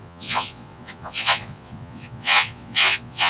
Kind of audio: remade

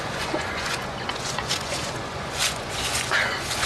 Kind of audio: remade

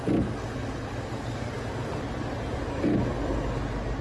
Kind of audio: recorded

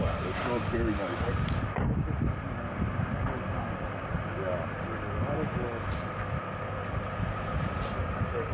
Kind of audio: recorded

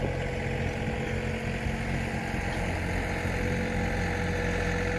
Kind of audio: recorded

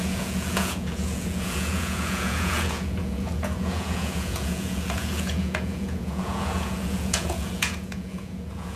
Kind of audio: remade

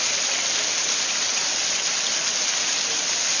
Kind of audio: recorded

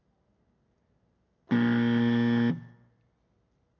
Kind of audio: recorded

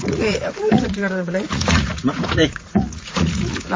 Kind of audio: remade